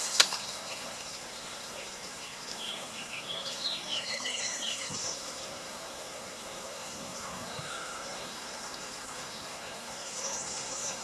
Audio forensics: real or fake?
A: fake